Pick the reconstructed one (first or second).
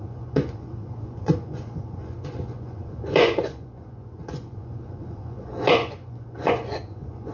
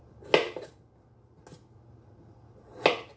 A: first